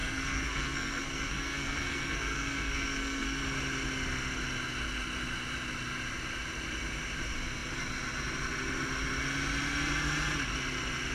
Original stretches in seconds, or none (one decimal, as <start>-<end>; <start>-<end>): 3.4-11.1